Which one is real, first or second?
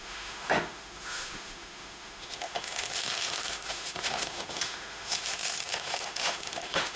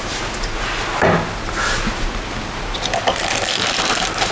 second